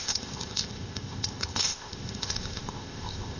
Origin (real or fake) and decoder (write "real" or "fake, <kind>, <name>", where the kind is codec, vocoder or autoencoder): fake, codec, ZipCodec